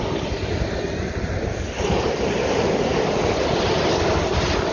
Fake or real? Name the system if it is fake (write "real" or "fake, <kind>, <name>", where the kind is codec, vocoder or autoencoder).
real